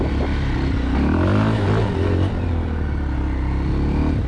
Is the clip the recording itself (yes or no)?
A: yes